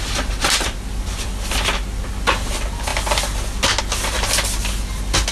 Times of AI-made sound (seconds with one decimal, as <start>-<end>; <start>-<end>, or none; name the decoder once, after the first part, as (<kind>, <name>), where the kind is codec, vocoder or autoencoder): none